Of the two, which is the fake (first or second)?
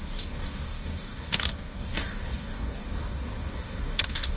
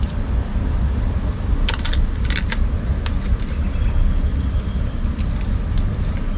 first